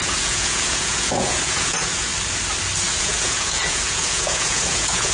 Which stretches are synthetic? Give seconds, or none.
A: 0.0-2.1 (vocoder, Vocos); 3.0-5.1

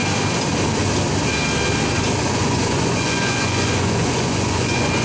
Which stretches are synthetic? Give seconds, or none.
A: 2.2-5.0 (vocoder, Vocos)

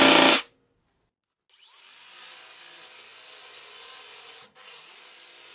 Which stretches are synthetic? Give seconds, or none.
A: none

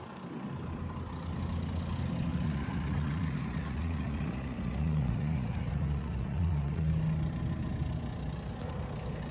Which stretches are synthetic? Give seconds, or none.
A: 2.3-6.9 (vocoder, Vocos)

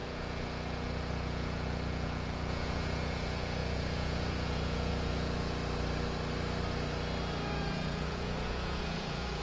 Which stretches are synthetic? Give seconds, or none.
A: 0.0-5.6 (vocoder, Vocos); 7.5-9.4

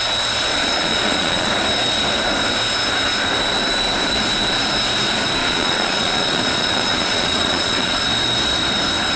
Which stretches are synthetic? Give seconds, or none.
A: 0.5-1.5 (vocoder, Vocos); 5.4-8.0

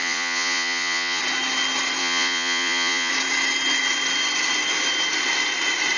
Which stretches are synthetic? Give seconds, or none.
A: 0.0-1.2 (vocoder, Vocos); 2.0-3.1